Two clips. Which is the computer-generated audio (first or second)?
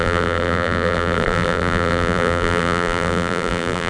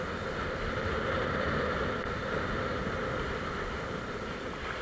first